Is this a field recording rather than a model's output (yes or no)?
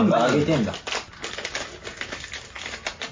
yes